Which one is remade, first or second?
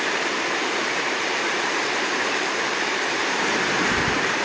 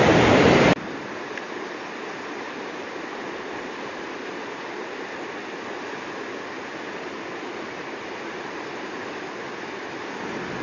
first